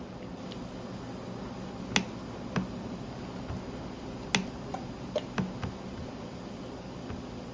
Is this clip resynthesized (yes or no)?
no